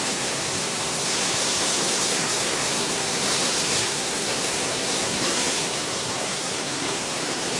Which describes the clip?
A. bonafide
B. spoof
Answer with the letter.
B